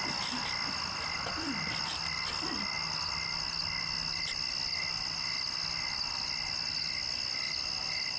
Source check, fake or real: real